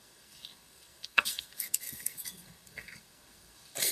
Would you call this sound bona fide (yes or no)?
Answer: no